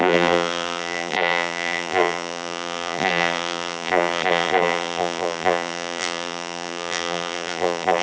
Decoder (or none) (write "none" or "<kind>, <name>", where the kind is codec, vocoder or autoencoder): vocoder, BigVGAN v2